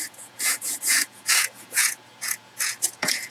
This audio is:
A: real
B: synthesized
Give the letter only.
B